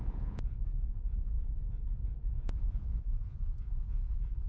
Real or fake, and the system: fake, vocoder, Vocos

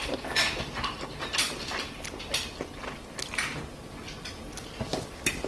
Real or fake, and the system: real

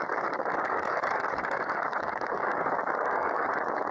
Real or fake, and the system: fake, codec, DAC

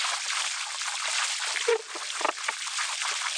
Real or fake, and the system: real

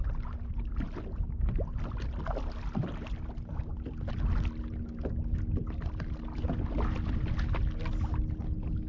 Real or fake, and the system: real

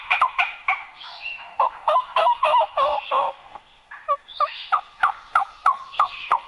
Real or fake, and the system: fake, autoencoder, DAC-VAE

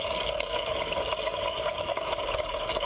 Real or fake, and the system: fake, codec, DAC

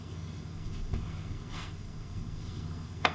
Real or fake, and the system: fake, codec, SNAC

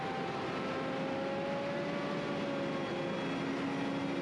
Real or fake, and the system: real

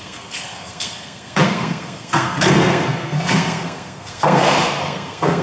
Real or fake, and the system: fake, codec, SNAC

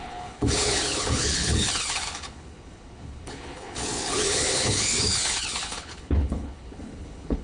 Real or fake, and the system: fake, codec, HILCodec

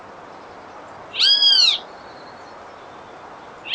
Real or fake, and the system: real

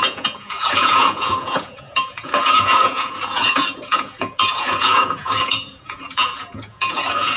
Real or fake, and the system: fake, vocoder, Vocos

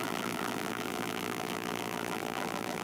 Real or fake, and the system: fake, vocoder, BigVGAN v2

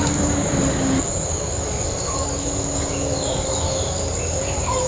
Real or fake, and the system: fake, codec, DAC